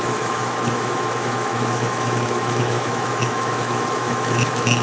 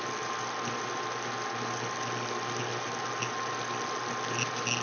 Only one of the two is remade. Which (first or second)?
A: first